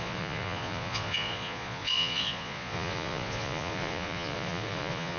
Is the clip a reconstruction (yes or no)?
yes